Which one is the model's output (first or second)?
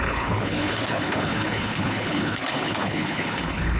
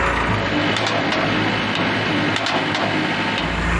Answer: first